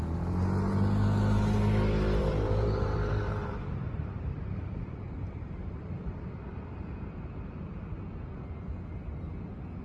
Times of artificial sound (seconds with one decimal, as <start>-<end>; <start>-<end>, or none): 2.2-6.3